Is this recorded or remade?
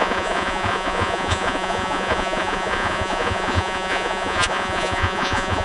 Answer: remade